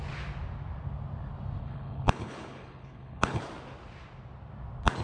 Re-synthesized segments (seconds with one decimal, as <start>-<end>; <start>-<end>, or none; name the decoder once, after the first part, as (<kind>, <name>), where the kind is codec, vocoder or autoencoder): 1.6-3.4 (codec, HILCodec)